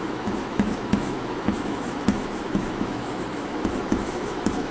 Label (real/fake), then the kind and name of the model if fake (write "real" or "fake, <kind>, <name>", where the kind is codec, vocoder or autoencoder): fake, autoencoder, DAC-VAE